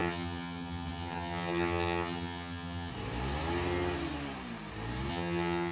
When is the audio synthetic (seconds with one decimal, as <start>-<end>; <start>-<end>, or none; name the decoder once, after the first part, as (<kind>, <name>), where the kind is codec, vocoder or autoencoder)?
0.0-2.9 (vocoder, HiFi-GAN); 5.1-5.7